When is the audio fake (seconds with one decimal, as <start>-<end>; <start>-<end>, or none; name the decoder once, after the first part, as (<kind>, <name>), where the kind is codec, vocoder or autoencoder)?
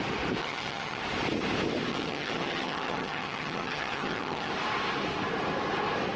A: 0.4-1.0 (vocoder, HiFi-GAN); 1.9-4.5